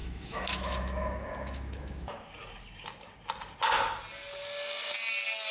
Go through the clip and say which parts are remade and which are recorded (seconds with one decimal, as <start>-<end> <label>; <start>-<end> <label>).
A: 0.0-2.3 remade; 2.3-5.5 recorded

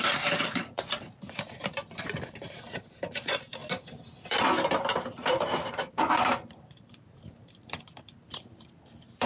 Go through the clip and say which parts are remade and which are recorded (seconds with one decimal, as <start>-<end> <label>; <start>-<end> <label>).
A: 0.0-3.6 remade; 3.6-4.3 recorded; 4.3-9.3 remade